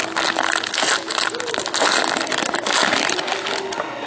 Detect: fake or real real